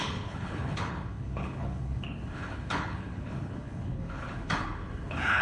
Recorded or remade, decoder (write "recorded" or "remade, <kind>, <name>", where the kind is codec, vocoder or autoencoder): remade, codec, HILCodec